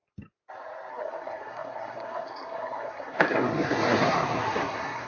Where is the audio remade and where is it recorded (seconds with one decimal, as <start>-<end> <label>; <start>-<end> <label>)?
0.0-0.9 recorded; 0.9-5.1 remade